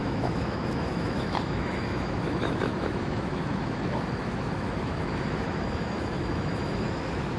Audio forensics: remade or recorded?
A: remade